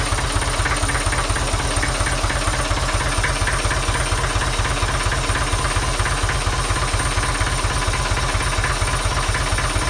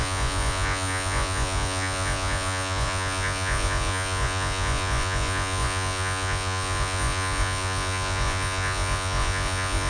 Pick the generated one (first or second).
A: second